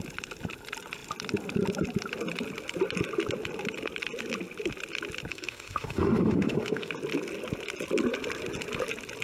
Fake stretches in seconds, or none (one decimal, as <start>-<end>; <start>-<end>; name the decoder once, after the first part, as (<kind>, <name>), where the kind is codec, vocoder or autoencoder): 5.3-6.9 (autoencoder, DAC-VAE)